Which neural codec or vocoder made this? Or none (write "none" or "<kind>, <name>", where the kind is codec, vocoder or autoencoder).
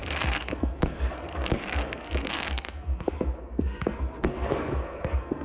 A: codec, SNAC